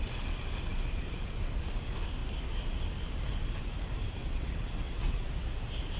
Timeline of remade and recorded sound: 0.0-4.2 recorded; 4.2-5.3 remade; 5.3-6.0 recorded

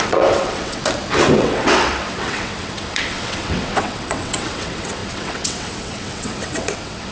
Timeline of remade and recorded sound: 0.0-0.8 remade; 0.8-1.4 recorded; 1.4-7.1 remade

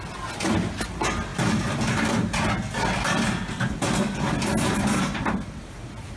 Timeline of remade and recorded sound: 0.0-6.2 recorded

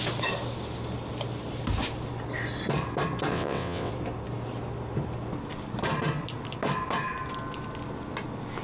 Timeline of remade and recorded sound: 0.0-3.3 recorded; 3.3-3.9 remade; 3.9-8.6 recorded

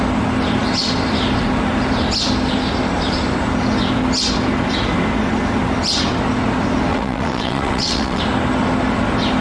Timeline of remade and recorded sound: 0.0-6.9 recorded; 6.9-8.2 remade; 8.2-9.4 recorded

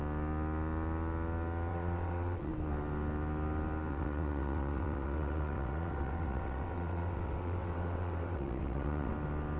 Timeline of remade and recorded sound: 0.0-1.7 recorded; 1.7-2.5 remade; 2.5-3.9 recorded; 3.9-9.1 remade; 9.1-9.6 recorded